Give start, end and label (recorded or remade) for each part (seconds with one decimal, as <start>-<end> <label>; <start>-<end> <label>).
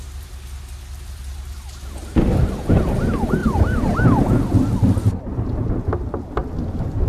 0.0-3.4 recorded; 3.4-4.5 remade; 4.5-7.1 recorded